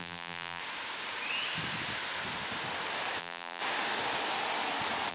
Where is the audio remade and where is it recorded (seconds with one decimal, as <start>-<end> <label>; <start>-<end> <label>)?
0.0-0.6 remade; 0.6-3.2 recorded; 3.2-3.6 remade; 3.6-5.1 recorded

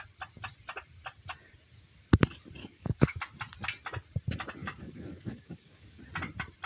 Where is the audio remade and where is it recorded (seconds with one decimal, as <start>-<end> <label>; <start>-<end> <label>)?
0.0-2.6 recorded; 2.6-3.2 remade; 3.2-4.6 recorded; 4.6-6.0 remade; 6.0-6.7 recorded